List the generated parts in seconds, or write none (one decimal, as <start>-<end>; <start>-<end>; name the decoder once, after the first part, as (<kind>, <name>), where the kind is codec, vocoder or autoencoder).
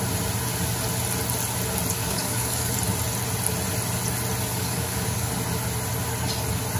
2.0-2.7 (codec, DAC); 4.5-5.3